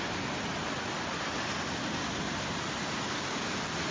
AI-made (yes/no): no